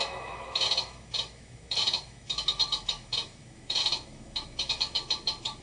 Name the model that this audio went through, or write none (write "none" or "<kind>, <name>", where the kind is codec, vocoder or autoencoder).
autoencoder, DAC-VAE